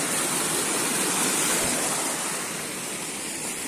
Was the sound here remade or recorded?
recorded